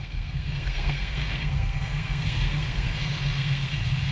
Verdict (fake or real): fake